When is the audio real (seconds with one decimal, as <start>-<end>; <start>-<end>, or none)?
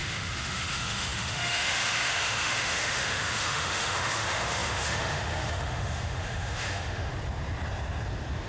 7.1-8.5